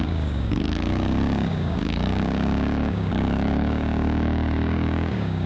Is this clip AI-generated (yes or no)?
yes